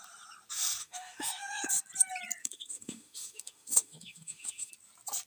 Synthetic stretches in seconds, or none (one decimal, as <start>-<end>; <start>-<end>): 0.8-1.7; 2.4-4.7